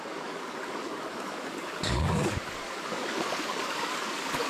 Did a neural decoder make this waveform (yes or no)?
yes